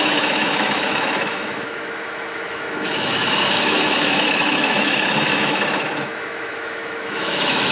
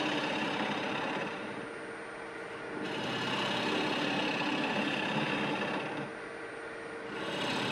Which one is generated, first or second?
first